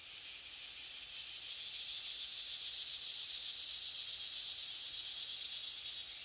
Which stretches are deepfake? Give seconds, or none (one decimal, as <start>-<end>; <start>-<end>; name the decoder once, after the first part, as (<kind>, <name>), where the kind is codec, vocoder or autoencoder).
none